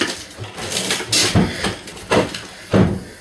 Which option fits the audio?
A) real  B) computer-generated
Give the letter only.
A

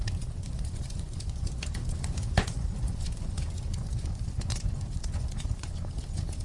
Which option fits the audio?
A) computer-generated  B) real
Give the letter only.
A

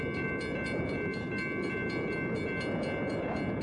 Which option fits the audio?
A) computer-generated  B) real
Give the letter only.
B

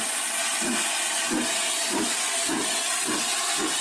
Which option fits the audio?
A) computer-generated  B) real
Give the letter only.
B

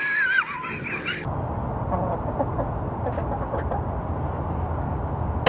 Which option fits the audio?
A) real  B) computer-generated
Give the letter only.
A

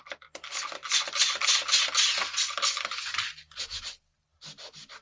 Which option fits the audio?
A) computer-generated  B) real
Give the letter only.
B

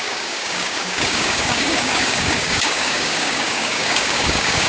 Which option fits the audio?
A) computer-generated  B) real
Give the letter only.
A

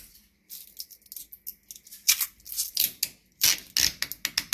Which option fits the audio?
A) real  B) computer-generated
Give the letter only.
A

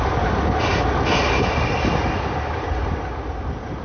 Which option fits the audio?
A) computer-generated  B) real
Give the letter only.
B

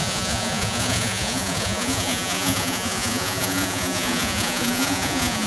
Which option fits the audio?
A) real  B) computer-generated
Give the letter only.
B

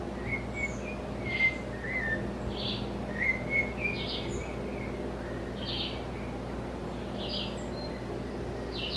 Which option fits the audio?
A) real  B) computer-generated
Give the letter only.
A